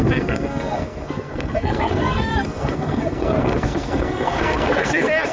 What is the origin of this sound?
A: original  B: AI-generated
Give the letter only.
B